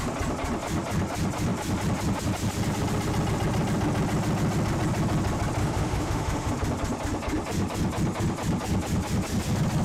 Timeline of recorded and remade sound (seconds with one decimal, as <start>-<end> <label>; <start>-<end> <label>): 0.0-5.6 recorded; 5.6-6.5 remade; 6.5-9.8 recorded